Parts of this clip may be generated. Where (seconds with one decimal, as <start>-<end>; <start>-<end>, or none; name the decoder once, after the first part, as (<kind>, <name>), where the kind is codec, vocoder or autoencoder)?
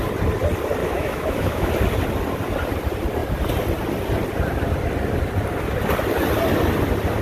0.8-1.7 (autoencoder, DAC-VAE)